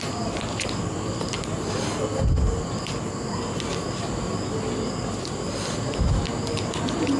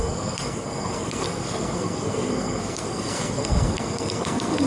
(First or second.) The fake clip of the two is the second